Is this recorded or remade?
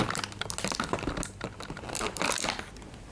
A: recorded